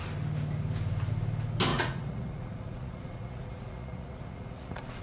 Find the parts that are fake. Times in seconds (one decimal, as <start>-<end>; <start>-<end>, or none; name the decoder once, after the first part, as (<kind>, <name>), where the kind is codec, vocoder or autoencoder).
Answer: 1.7-5.0 (vocoder, Vocos)